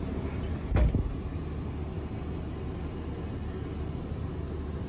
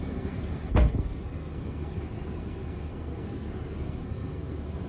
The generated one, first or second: second